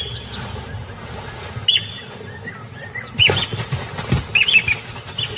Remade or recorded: recorded